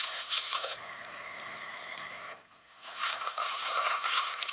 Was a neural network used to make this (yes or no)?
yes